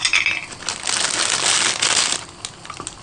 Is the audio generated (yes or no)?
no